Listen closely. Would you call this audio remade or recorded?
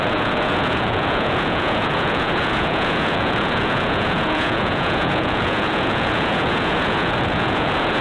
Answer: remade